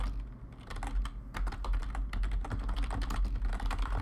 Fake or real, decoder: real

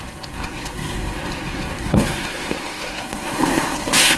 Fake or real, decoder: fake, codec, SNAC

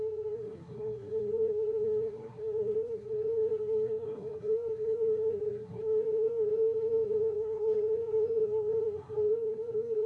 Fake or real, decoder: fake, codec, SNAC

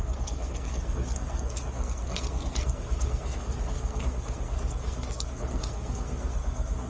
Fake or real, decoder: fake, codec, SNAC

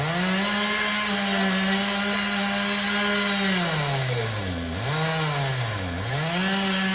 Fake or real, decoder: real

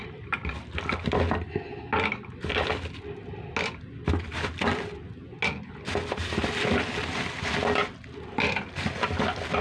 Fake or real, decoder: real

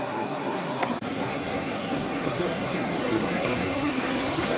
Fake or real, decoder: fake, codec, SNAC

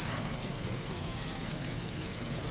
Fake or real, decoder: fake, codec, SNAC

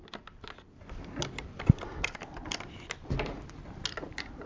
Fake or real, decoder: real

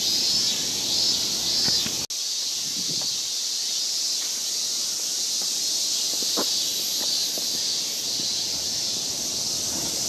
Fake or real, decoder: real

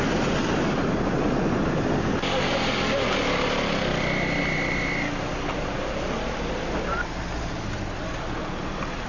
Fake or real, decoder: real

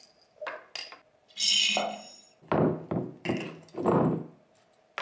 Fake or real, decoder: real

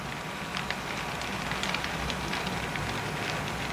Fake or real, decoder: real